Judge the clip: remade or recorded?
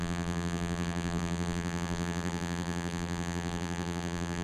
remade